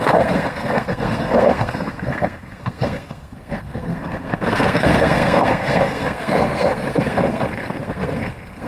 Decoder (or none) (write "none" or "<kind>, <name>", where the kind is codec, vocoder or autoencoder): codec, SNAC